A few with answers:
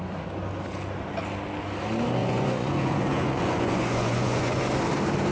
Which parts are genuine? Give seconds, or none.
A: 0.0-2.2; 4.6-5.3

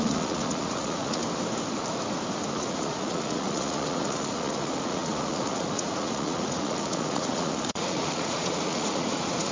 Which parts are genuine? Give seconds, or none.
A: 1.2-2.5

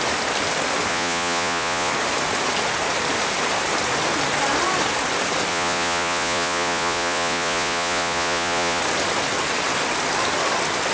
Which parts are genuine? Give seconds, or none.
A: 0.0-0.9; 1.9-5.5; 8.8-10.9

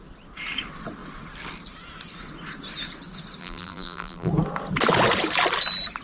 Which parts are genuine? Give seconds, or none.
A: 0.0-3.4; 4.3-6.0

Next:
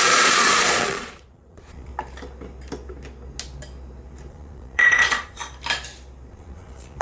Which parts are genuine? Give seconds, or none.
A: 1.9-4.3; 5.4-6.3

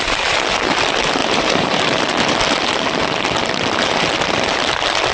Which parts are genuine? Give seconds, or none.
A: 0.0-1.2; 2.0-5.1

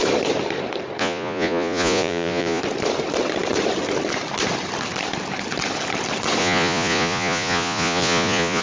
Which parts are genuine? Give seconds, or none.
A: 0.0-1.0; 2.6-6.4